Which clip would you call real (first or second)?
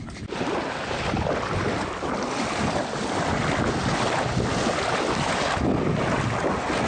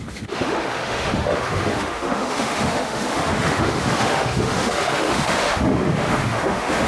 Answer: first